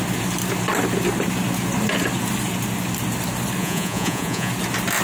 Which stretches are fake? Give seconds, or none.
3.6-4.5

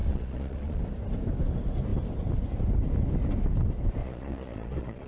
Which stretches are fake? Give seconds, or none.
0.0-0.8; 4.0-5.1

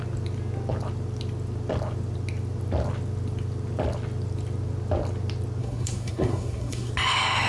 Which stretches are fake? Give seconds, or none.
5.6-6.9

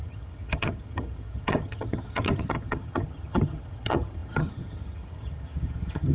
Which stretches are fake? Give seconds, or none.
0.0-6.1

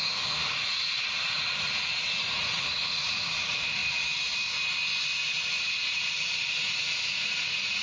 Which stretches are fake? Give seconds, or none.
0.6-3.8; 5.6-7.8

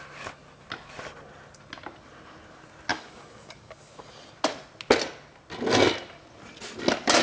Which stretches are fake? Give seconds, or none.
2.9-4.0